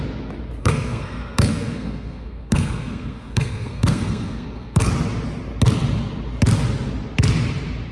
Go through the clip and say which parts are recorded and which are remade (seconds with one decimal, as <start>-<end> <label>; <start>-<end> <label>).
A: 0.0-0.6 recorded; 0.6-4.9 remade; 4.9-7.9 recorded